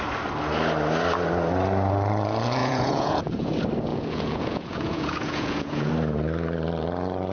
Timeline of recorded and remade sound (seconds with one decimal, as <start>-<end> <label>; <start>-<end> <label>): 0.0-2.6 recorded; 2.6-3.5 remade; 3.5-3.9 recorded; 3.9-5.9 remade; 5.9-7.3 recorded